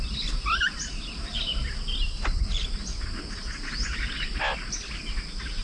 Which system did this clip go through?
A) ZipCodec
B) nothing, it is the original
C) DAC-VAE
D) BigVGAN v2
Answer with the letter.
B